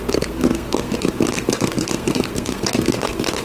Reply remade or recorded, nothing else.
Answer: remade